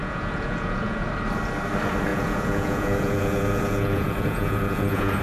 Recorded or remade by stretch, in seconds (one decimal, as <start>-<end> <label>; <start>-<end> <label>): 0.0-1.1 remade; 1.1-2.1 recorded; 2.1-5.2 remade